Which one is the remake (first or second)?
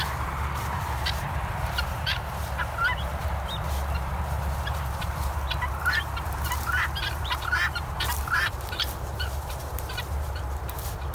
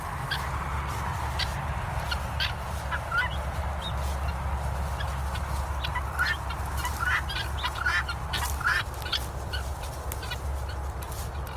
first